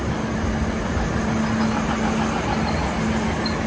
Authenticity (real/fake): real